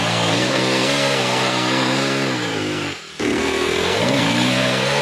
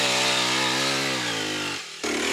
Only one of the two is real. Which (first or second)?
second